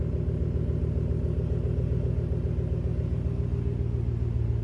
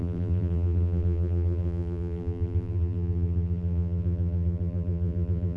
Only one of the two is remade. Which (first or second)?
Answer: second